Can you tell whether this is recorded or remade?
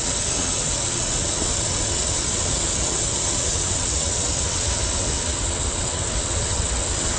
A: remade